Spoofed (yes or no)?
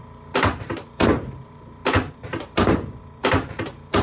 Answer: yes